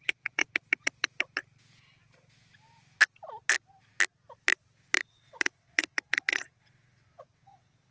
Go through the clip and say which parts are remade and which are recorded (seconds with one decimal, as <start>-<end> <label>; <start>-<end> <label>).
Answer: 0.0-0.4 remade; 0.4-5.0 recorded; 5.0-7.9 remade